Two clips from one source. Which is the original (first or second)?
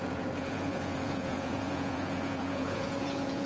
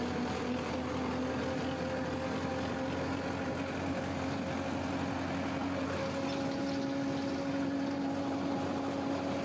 second